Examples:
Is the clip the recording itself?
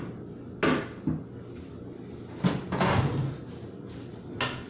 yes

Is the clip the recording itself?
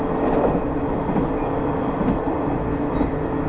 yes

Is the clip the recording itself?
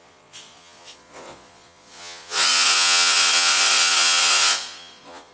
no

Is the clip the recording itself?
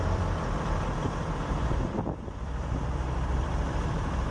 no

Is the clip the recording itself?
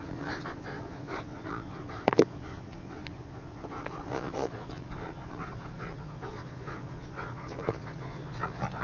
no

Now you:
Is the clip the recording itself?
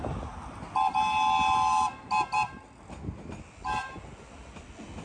yes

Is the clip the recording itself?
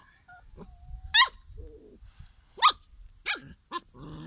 yes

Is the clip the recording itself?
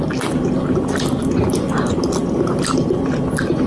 yes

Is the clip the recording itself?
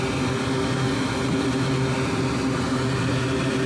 yes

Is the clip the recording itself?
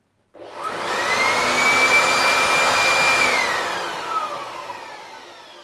yes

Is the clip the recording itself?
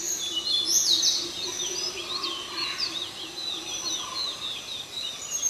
yes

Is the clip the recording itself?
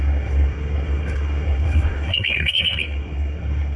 no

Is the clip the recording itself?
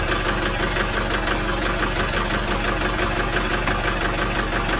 yes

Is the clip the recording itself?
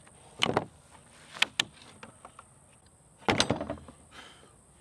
yes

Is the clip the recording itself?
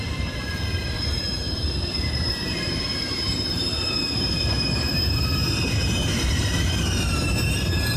no